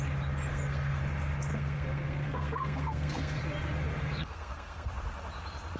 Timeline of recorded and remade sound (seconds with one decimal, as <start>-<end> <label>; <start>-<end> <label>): 0.0-0.5 recorded; 0.5-1.0 remade; 1.0-1.5 recorded; 1.5-3.4 remade; 3.4-4.0 recorded; 4.0-4.9 remade; 4.9-5.8 recorded